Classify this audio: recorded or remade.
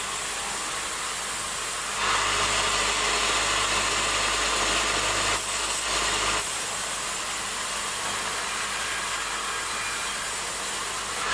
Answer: recorded